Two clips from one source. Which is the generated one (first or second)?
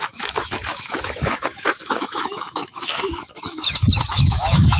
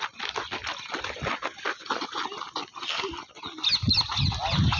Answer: first